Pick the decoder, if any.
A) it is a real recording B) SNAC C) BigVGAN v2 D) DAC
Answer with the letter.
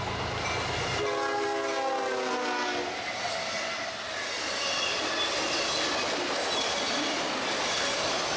A